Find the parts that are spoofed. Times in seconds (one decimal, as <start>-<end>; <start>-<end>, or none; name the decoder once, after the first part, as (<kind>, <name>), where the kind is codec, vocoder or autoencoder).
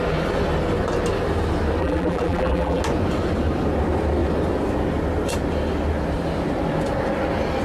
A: 1.8-2.8 (vocoder, BigVGAN v2)